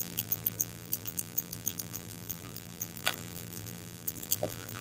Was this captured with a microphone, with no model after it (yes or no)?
no